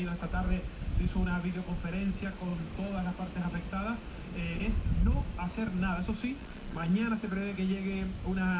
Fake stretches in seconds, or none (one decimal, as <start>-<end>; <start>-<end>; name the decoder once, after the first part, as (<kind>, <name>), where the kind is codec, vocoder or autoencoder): 6.4-6.9 (vocoder, Vocos)